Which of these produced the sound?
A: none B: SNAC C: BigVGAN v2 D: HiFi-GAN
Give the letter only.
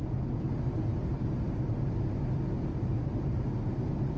A